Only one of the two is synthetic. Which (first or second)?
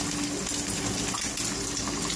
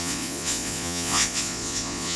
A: second